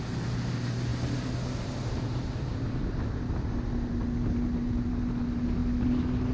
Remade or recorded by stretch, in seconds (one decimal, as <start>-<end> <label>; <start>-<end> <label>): 0.0-6.3 recorded